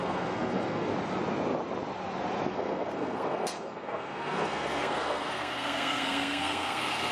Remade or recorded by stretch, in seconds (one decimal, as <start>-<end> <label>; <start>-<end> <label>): 0.0-0.9 remade; 0.9-2.5 recorded; 2.5-7.1 remade